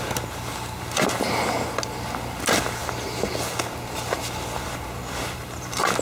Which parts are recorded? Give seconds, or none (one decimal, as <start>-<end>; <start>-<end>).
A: 0.0-6.0